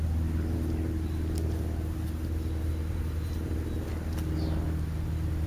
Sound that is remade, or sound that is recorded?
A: recorded